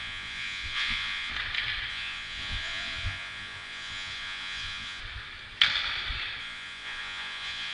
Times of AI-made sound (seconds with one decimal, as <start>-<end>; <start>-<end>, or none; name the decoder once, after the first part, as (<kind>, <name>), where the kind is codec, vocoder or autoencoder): 0.0-1.3 (vocoder, Vocos); 1.9-5.0; 6.4-7.7